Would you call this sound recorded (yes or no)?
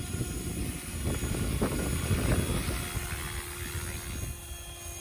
yes